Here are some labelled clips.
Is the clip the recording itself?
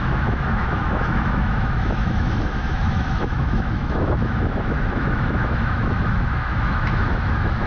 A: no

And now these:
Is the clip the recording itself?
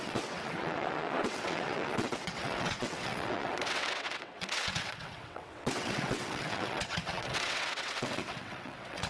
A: no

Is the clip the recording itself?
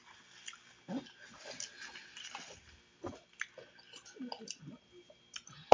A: yes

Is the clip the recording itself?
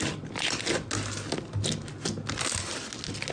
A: yes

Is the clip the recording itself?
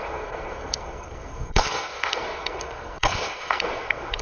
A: no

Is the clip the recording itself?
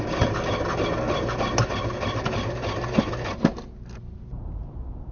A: yes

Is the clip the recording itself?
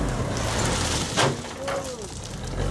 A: yes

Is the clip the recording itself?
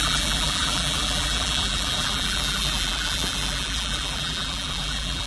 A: no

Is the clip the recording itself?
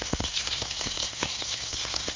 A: no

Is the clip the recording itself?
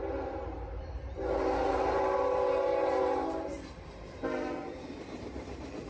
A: no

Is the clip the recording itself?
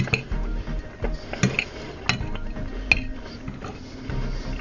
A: yes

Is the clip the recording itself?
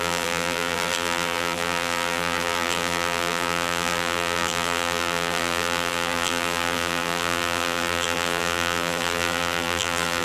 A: no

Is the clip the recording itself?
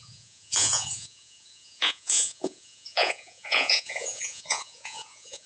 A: no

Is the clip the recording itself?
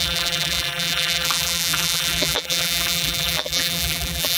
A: no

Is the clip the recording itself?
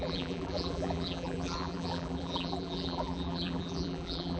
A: no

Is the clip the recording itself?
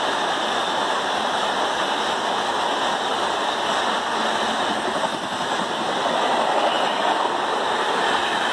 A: yes